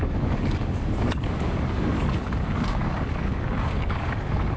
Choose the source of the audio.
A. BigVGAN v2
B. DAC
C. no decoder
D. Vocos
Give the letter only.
B